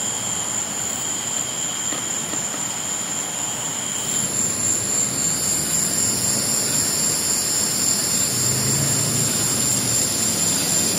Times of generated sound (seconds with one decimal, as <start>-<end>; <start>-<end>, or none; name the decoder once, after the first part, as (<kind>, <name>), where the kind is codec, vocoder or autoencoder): 8.0-8.8 (vocoder, BigVGAN v2)